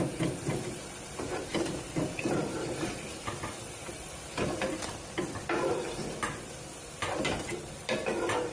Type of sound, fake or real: fake